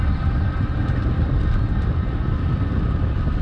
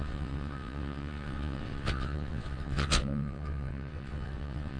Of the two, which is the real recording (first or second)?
first